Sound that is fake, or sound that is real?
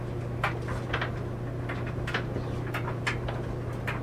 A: real